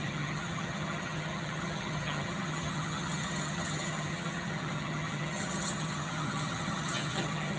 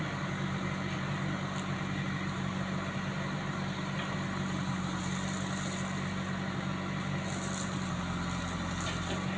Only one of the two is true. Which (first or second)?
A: second